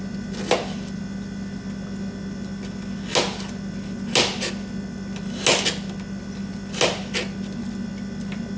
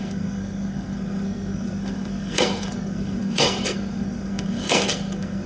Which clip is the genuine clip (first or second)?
first